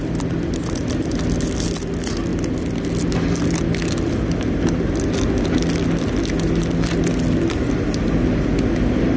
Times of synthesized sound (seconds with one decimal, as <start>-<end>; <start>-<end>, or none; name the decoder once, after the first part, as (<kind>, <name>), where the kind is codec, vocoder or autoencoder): none

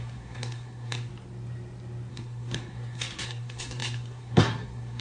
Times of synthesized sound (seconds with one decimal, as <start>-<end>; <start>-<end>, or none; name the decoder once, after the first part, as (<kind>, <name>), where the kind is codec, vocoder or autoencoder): 0.0-1.1 (codec, SNAC); 2.1-5.0

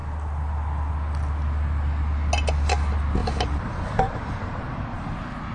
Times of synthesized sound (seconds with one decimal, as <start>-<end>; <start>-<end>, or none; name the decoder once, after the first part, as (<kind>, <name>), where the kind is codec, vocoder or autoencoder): 3.2-5.1 (vocoder, BigVGAN v2)